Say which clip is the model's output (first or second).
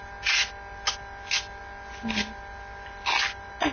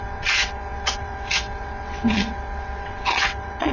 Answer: second